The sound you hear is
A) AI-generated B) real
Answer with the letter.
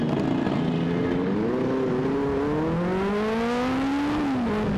B